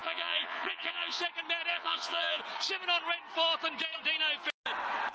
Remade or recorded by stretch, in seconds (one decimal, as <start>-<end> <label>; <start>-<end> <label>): 0.0-1.2 remade; 1.2-1.7 recorded; 1.7-2.4 remade; 2.4-5.1 recorded